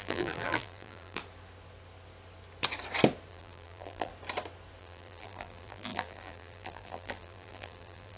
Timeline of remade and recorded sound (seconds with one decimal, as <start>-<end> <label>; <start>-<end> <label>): 0.0-1.2 remade; 1.2-3.3 recorded; 3.3-4.1 remade; 4.1-4.8 recorded; 4.8-8.2 remade